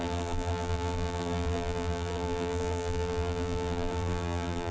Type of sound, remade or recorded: remade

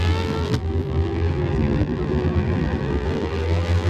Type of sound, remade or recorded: remade